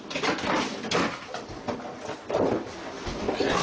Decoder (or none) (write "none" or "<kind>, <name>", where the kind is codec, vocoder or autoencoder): none